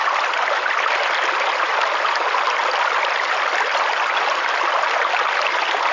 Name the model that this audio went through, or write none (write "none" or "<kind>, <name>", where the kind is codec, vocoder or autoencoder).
none